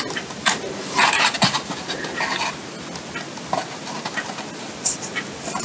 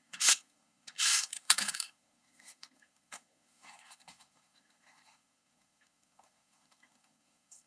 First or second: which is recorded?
first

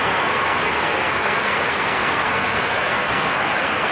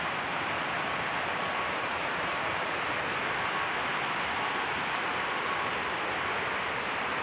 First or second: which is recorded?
second